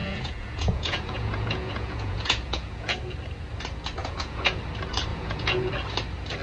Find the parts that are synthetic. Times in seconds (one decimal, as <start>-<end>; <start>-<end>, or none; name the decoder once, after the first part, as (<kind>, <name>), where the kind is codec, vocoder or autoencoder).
0.0-3.0 (vocoder, Vocos); 4.0-4.6; 5.1-5.7